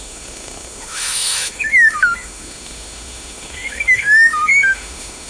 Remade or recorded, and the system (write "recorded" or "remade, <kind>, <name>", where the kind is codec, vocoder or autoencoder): remade, autoencoder, DAC-VAE